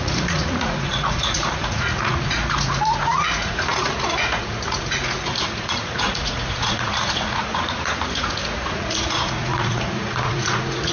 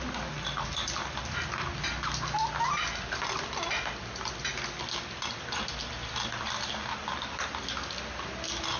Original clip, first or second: second